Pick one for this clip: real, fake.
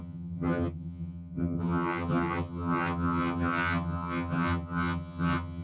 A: fake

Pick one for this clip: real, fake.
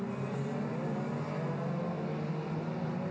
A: real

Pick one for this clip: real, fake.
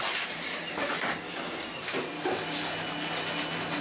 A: real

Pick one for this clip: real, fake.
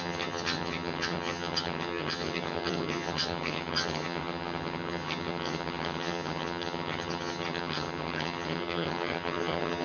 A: fake